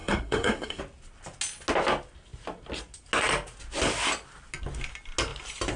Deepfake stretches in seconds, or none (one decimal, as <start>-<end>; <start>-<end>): 0.0-0.8